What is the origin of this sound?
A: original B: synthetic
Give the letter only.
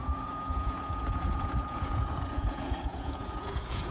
B